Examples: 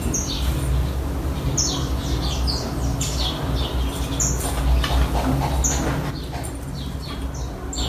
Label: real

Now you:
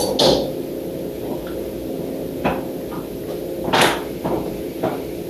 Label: real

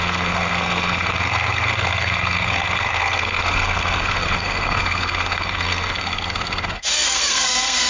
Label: fake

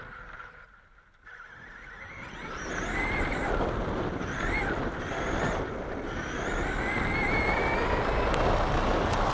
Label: real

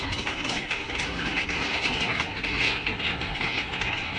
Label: fake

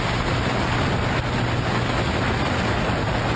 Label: real